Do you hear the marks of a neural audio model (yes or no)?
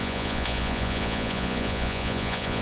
yes